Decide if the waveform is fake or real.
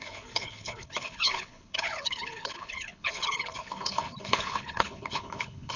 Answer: fake